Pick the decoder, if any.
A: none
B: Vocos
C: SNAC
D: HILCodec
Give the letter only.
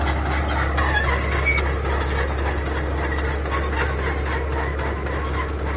A